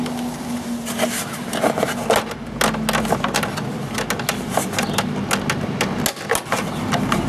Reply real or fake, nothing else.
real